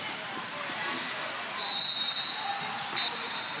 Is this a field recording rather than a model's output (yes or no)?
yes